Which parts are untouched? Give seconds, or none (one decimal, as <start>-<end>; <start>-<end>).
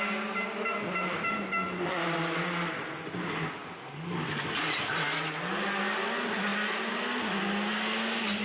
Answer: 0.0-8.4